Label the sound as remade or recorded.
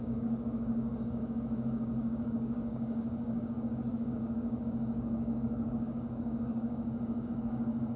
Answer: remade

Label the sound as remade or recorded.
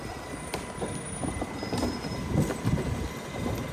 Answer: recorded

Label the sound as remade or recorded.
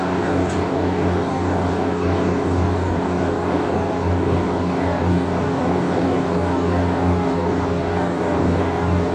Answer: remade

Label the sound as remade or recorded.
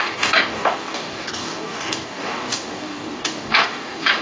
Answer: remade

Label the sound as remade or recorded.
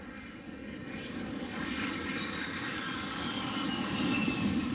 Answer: remade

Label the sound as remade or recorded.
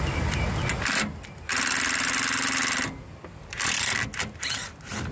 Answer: recorded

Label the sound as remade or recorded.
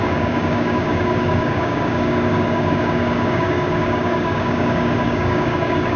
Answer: remade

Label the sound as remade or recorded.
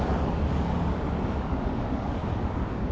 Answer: remade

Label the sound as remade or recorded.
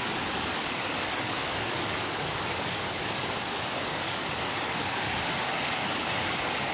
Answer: remade